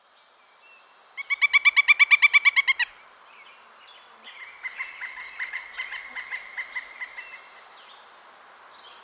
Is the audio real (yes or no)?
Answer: yes